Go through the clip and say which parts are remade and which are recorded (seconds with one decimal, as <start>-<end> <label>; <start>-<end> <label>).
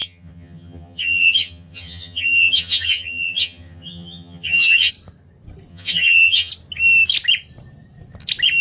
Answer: 0.0-4.9 remade; 4.9-5.7 recorded; 5.7-6.5 remade; 6.5-8.6 recorded